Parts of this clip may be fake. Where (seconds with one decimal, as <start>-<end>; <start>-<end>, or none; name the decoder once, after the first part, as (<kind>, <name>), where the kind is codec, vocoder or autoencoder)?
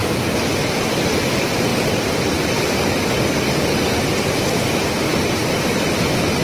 none